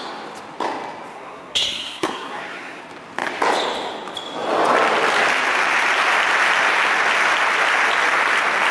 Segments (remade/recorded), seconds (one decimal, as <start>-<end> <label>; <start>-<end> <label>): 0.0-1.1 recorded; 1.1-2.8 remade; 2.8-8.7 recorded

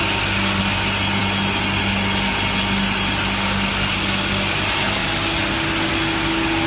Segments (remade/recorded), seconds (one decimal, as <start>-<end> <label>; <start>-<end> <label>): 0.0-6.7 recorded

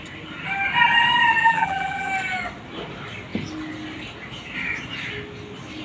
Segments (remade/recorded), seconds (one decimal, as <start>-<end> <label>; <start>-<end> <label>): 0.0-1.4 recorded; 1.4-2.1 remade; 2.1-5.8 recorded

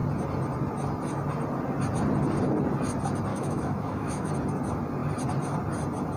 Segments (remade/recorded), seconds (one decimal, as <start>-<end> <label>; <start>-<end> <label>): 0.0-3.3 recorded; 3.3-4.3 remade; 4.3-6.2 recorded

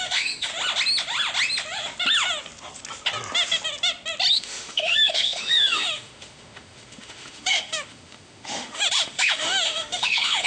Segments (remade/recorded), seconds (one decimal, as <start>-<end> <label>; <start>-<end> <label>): 0.0-0.5 remade; 0.5-4.3 recorded; 4.3-10.5 remade

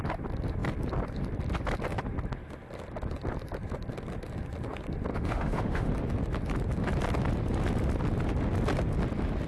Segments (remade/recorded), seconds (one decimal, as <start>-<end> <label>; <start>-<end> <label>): 0.0-5.1 recorded; 5.1-5.9 remade; 5.9-9.5 recorded

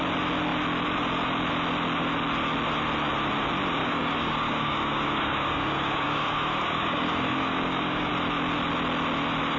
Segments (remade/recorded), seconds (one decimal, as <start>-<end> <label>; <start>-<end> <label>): 0.0-3.8 recorded; 3.8-8.1 remade; 8.1-9.6 recorded

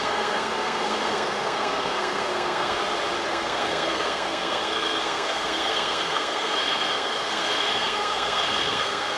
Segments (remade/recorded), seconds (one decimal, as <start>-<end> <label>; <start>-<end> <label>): 0.0-2.8 remade; 2.8-3.3 recorded; 3.3-9.2 remade